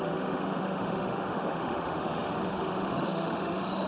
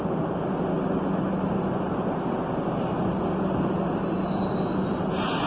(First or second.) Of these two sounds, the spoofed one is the first